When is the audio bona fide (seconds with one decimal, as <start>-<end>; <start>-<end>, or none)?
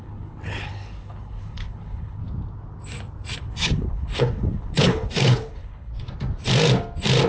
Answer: 2.2-3.4; 5.9-7.3